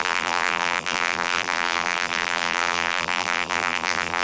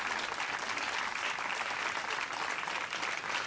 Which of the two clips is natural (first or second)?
second